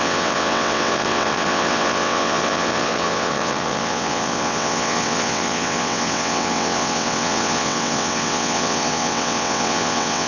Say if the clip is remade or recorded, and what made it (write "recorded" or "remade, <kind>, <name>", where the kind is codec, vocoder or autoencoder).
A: remade, vocoder, WaveNeXt